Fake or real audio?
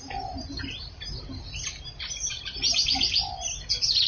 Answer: real